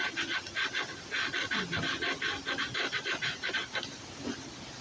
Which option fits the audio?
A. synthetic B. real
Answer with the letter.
B